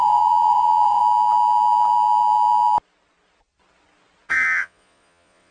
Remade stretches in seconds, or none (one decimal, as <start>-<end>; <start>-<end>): 0.0-1.0; 4.3-5.5